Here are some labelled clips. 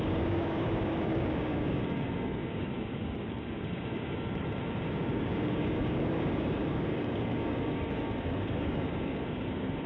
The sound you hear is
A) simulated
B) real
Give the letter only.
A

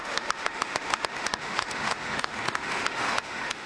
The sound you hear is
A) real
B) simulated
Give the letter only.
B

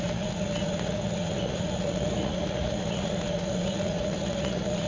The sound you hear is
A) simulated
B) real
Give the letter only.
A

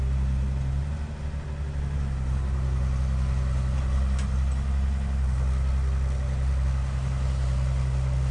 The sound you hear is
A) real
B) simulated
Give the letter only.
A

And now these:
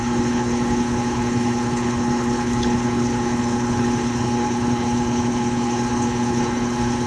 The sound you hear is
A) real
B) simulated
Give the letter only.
B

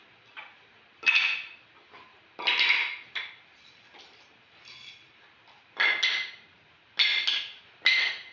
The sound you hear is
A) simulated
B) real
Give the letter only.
B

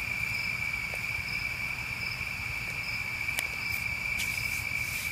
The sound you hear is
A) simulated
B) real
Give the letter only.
B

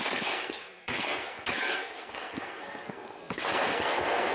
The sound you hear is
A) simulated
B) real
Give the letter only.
A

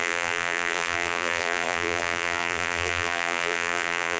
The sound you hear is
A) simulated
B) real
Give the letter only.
A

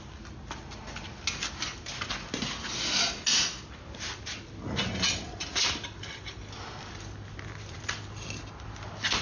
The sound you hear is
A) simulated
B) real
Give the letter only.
B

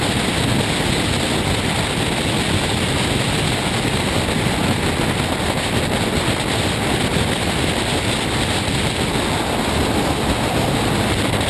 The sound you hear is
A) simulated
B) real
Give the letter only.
B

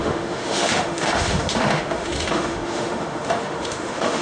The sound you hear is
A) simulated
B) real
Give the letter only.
A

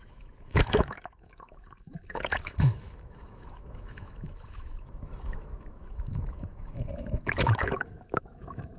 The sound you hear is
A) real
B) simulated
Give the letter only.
B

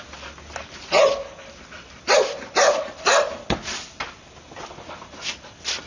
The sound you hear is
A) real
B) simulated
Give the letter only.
A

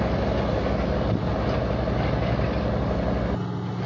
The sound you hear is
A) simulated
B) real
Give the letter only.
B